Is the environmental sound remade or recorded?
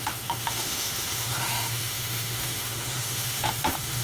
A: remade